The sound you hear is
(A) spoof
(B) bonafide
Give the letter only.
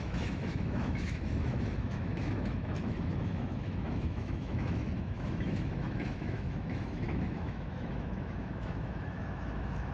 A